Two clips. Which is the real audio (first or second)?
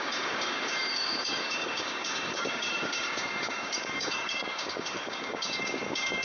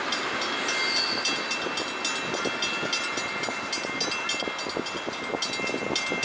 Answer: second